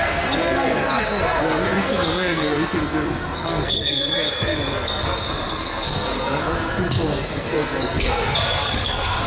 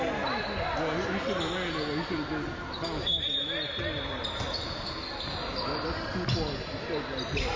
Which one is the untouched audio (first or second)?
second